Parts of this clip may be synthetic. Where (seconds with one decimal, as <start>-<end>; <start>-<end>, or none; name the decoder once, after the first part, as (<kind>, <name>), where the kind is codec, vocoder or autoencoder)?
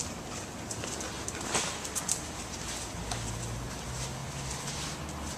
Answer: none